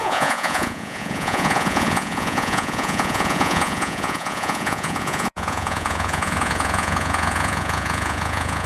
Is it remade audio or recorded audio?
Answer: remade